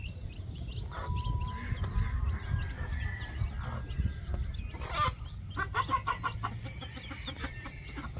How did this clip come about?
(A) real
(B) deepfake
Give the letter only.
A